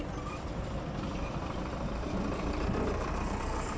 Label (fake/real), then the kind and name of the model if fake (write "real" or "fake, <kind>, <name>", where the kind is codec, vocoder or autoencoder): fake, vocoder, BigVGAN v2